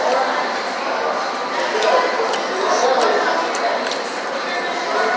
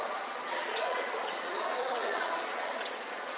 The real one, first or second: first